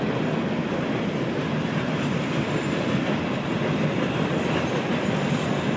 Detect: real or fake real